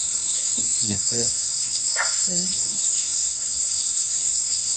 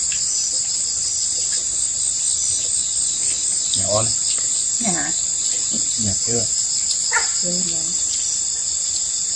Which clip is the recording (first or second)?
second